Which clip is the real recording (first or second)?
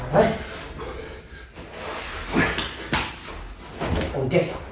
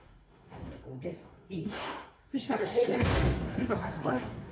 first